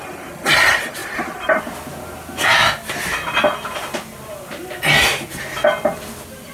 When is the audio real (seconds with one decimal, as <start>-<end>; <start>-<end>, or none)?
0.0-6.5